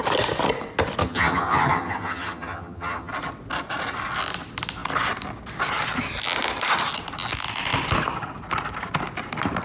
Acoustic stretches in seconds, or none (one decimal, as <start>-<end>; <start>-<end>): 0.0-1.0; 3.1-9.6